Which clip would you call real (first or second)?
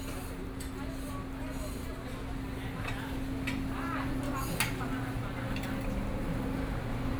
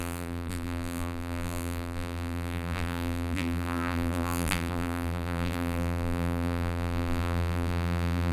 first